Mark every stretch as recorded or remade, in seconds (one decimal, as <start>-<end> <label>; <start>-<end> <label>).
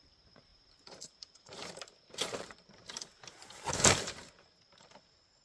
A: 0.0-5.4 remade